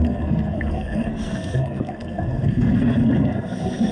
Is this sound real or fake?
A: fake